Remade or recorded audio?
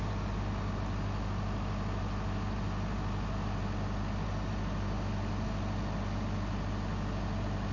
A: recorded